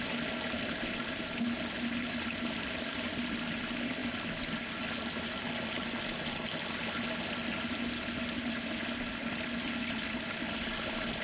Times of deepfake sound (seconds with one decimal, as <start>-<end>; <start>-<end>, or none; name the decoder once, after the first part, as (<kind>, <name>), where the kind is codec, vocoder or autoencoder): none